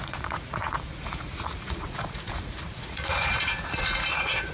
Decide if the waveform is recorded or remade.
remade